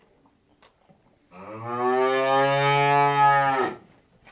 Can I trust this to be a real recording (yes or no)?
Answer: yes